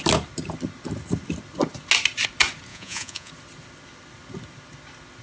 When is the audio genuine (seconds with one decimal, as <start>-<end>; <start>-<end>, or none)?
0.0-2.7; 3.3-5.2